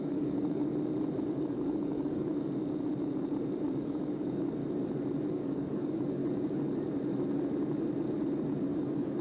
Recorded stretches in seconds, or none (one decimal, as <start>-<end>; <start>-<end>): 0.7-1.3; 2.3-3.8; 4.6-5.3; 6.2-8.6